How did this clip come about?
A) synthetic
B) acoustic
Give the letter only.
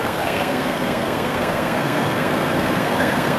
A